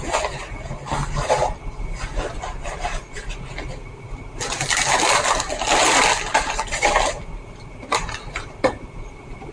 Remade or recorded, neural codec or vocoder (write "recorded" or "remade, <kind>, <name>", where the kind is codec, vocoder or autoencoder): recorded